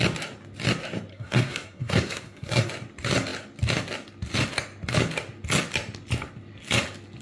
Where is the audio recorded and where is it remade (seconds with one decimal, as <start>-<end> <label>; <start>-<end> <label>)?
0.0-1.1 recorded; 1.1-2.7 remade; 2.7-7.2 recorded